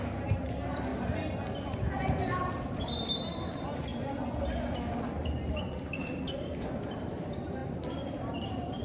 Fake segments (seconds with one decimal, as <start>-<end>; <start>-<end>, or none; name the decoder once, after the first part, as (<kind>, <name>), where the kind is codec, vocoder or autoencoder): 0.0-0.9 (vocoder, BigVGAN v2); 2.3-3.9; 5.6-7.6; 8.1-8.8